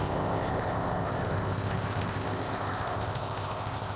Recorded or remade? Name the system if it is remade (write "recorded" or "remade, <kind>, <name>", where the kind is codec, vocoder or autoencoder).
remade, codec, ZipCodec